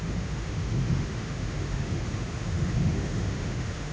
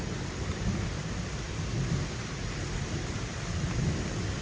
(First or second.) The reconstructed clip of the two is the first